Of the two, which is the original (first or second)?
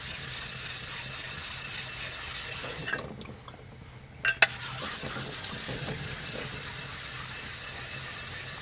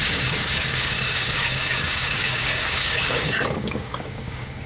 first